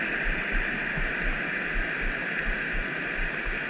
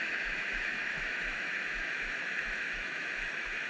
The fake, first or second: second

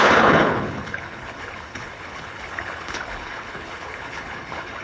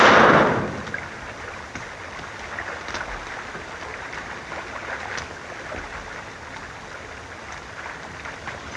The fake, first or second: first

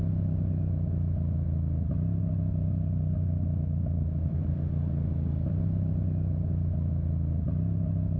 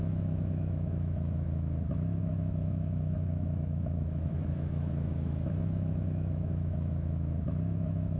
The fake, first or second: second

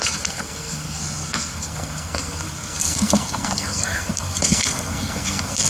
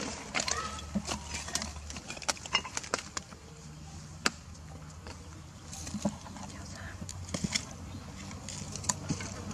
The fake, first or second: first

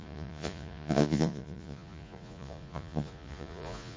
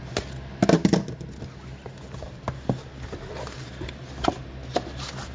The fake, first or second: first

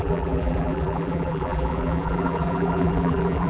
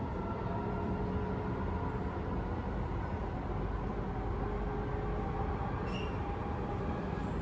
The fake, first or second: first